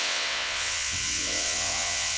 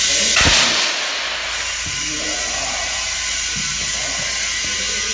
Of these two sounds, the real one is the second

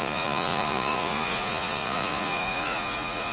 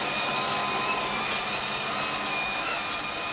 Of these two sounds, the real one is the second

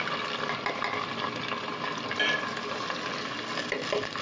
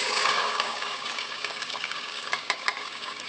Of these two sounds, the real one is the first